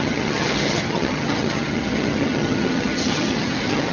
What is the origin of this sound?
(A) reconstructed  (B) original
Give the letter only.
A